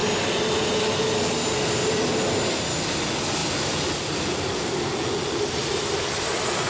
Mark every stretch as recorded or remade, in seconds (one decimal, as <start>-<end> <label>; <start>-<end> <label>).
0.0-6.7 recorded